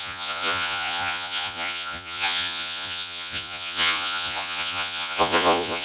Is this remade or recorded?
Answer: remade